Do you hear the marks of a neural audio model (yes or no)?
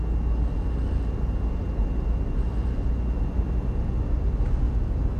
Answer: no